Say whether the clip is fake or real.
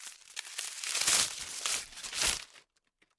real